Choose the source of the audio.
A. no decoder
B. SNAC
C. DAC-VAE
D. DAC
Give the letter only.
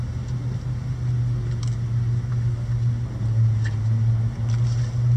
A